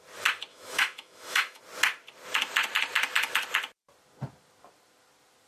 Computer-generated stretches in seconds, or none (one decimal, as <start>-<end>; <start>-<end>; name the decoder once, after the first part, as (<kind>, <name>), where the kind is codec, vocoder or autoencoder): 0.5-1.6 (autoencoder, DAC-VAE)